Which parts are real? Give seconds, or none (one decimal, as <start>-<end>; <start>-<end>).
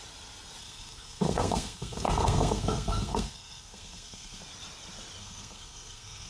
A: 0.0-0.6; 4.4-5.2